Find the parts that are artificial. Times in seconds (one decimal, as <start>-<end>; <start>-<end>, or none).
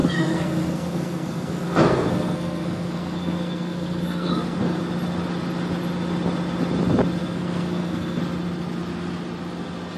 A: 0.0-4.8; 7.2-8.2